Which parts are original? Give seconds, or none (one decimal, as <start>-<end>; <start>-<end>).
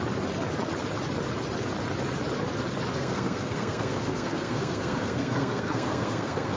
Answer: 0.0-2.9